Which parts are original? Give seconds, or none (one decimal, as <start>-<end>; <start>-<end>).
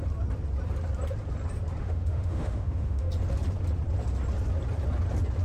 0.0-1.8; 3.1-5.4